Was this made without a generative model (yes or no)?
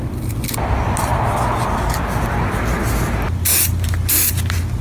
yes